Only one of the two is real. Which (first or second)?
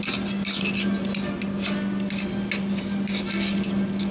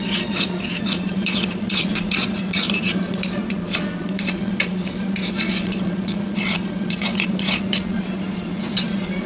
first